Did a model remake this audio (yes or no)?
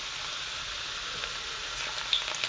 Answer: no